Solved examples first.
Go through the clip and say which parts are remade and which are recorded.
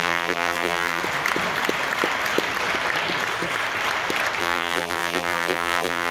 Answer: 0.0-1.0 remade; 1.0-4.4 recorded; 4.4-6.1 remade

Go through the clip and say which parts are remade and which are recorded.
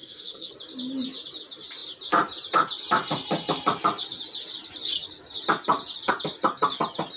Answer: 0.0-0.5 remade; 0.5-7.2 recorded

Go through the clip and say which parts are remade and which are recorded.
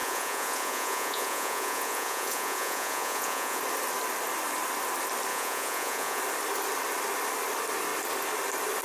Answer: 0.0-3.6 remade; 3.6-5.3 recorded; 5.3-6.2 remade; 6.2-8.8 recorded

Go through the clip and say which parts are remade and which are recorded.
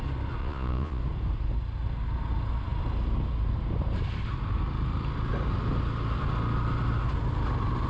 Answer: 0.0-0.4 recorded; 0.4-1.0 remade; 1.0-7.9 recorded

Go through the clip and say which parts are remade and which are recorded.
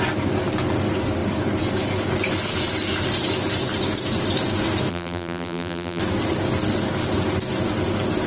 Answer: 0.0-4.9 recorded; 4.9-6.0 remade; 6.0-8.3 recorded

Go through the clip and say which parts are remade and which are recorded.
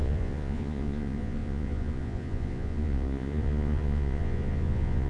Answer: 0.0-5.1 remade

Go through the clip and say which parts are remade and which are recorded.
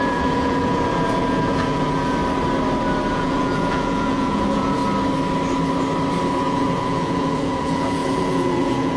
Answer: 0.0-2.2 remade; 2.2-3.1 recorded; 3.1-4.8 remade; 4.8-6.4 recorded; 6.4-9.0 remade